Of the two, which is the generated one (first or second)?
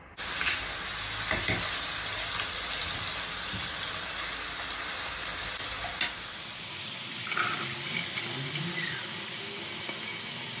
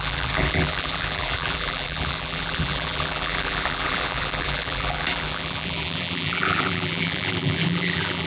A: second